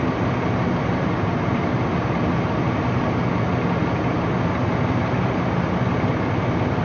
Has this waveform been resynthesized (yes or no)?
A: no